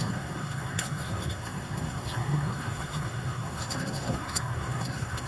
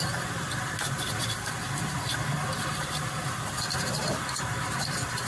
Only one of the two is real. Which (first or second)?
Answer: second